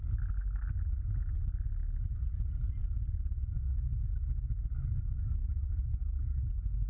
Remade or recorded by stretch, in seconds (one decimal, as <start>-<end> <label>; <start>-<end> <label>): 0.0-6.9 recorded